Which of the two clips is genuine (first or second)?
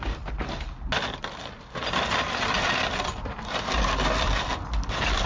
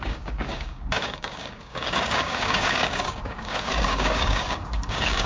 first